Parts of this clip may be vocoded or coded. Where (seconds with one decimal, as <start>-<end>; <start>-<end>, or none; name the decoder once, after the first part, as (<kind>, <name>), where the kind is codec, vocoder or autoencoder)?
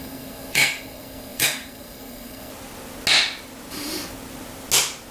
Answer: 0.0-2.5 (codec, SNAC)